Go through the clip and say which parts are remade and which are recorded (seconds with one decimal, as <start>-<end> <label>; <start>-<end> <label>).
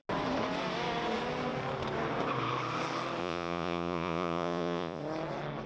0.0-3.2 recorded; 3.2-5.0 remade; 5.0-5.7 recorded